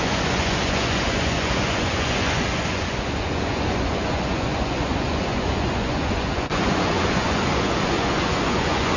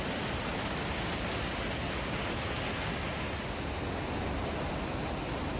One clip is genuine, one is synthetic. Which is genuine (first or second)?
second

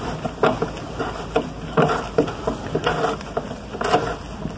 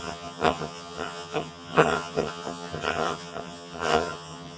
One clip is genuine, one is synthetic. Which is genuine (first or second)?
first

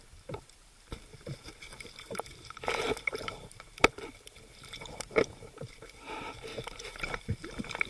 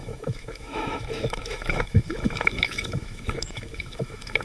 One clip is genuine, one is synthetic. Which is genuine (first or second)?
first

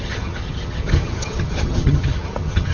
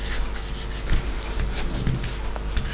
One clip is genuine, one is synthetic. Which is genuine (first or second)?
second